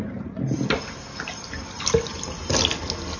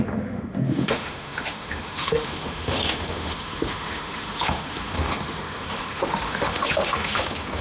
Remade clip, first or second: second